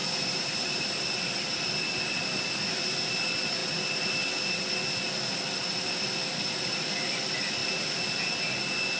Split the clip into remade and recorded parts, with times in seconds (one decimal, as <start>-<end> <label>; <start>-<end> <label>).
0.0-9.0 recorded